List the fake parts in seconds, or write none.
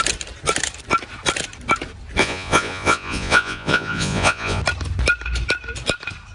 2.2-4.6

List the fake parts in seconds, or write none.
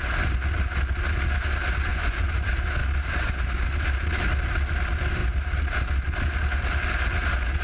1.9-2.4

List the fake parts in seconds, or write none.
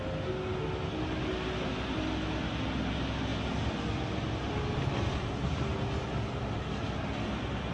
none